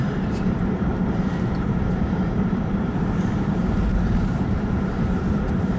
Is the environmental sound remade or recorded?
remade